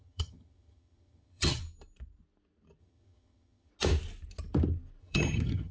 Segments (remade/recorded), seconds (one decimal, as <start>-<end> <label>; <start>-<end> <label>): 0.0-1.6 remade; 1.6-2.8 recorded; 2.8-3.7 remade; 3.7-5.0 recorded; 5.0-5.7 remade